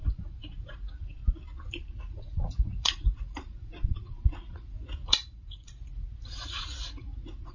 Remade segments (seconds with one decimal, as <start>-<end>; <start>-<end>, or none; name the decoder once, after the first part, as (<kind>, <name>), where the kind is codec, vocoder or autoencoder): 0.0-1.2 (vocoder, Vocos); 2.0-7.5